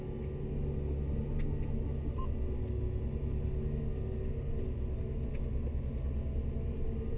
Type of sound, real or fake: real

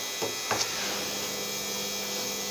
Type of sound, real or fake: real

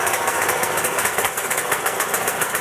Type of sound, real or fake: fake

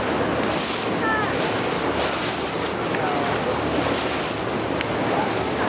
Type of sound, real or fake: real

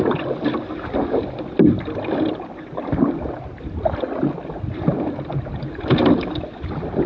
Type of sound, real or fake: fake